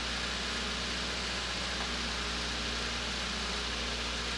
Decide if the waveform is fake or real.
real